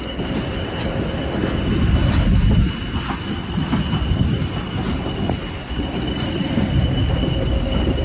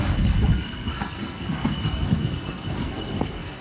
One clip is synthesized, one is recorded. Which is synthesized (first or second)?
second